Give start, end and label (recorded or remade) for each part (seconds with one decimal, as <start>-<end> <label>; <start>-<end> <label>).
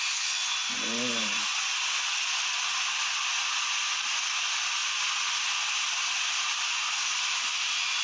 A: 0.0-8.0 recorded